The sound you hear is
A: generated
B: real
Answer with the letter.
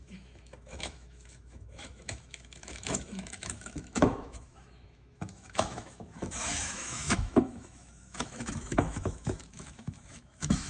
A